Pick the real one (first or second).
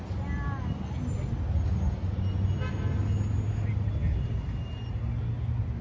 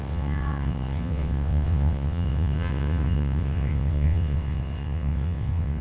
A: first